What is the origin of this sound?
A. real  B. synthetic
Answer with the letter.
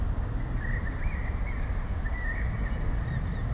A